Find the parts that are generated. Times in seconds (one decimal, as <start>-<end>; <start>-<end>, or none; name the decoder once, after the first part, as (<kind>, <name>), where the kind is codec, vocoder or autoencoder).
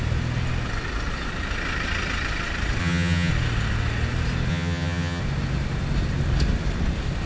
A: 2.8-3.3 (vocoder, HiFi-GAN); 4.5-5.2